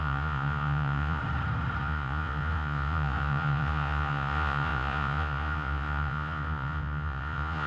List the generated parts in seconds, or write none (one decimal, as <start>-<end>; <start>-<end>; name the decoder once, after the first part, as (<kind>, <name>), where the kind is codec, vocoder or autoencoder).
0.0-1.2 (vocoder, Vocos); 1.8-7.7